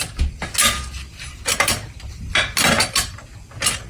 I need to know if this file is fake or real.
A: real